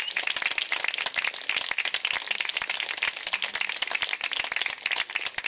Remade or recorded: recorded